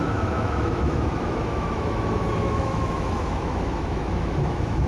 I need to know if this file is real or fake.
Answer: fake